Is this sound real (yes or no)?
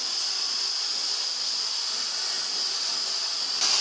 yes